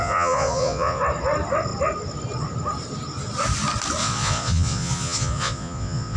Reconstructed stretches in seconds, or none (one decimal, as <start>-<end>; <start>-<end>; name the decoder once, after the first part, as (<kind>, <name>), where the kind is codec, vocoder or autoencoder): 0.0-1.0 (vocoder, Vocos); 4.0-6.2